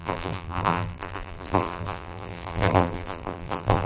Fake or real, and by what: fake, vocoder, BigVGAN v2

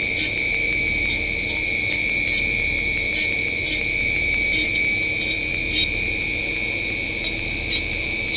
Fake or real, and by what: fake, vocoder, BigVGAN v2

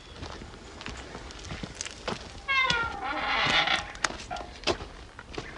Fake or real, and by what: real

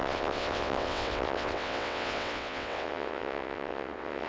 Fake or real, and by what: fake, vocoder, WaveNeXt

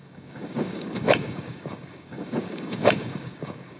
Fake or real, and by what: fake, codec, DAC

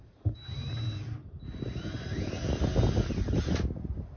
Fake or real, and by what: real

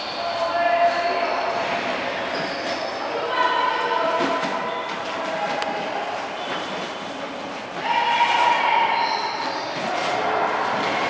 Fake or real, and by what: real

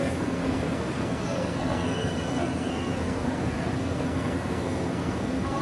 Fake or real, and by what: fake, codec, SNAC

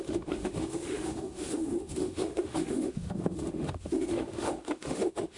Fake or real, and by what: fake, autoencoder, DAC-VAE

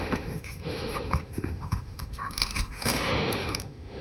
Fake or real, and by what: fake, autoencoder, DAC-VAE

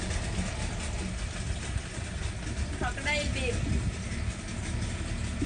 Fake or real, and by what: real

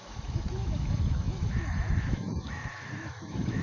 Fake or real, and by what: fake, autoencoder, DAC-VAE